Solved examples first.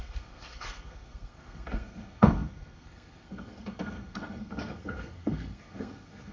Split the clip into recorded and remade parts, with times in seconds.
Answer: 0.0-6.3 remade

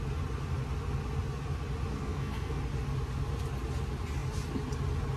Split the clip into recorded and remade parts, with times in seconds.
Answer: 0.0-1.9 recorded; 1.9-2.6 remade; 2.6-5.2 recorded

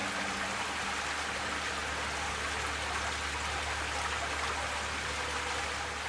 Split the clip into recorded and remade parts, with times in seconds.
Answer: 0.0-6.1 recorded

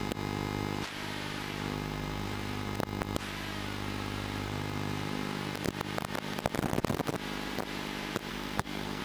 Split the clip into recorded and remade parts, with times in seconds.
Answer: 0.0-8.3 recorded; 8.3-9.0 remade

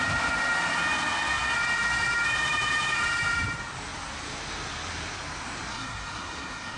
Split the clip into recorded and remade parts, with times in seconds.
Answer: 0.0-5.7 recorded; 5.7-6.8 remade

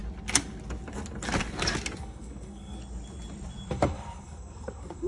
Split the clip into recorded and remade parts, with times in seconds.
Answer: 0.0-2.0 recorded; 2.0-2.8 remade; 2.8-3.7 recorded; 3.7-5.1 remade